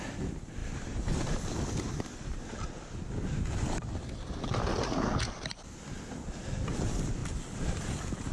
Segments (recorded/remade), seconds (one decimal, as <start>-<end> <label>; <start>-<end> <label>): 0.0-0.6 recorded; 0.6-1.9 remade; 1.9-8.3 recorded